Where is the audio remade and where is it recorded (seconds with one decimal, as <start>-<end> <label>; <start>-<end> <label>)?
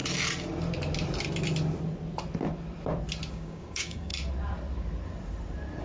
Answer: 0.0-3.3 recorded; 3.3-4.1 remade; 4.1-5.8 recorded